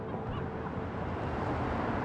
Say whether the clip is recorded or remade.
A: recorded